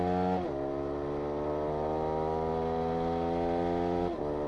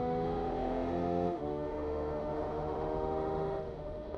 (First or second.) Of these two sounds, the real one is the first